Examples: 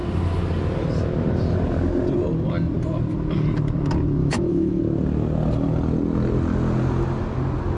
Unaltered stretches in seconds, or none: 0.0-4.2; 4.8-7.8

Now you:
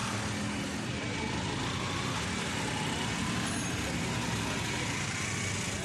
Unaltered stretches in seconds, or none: 0.0-5.8

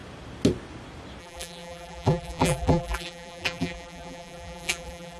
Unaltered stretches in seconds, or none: 0.0-1.2

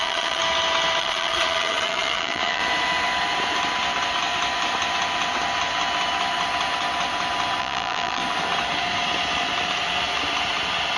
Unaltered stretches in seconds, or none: 0.4-1.0; 2.6-7.6; 8.2-11.0